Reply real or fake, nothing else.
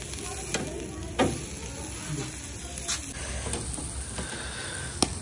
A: real